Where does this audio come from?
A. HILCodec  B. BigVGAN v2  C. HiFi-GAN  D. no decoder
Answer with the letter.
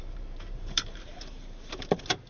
B